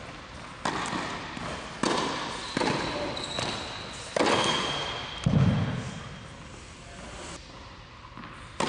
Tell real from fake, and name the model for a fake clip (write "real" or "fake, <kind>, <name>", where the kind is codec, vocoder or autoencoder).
real